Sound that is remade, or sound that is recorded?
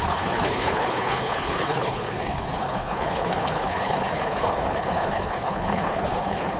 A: remade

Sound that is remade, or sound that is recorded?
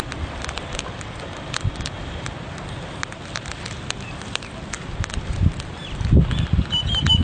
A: recorded